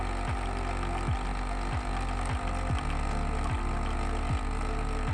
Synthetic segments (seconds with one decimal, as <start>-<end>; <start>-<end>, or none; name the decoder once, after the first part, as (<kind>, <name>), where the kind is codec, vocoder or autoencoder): none